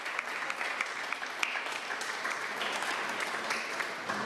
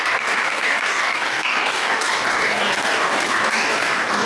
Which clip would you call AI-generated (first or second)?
second